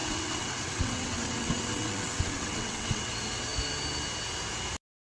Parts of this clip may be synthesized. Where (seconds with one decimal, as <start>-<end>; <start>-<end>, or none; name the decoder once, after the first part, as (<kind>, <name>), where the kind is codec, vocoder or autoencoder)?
0.0-3.1 (vocoder, WaveNeXt)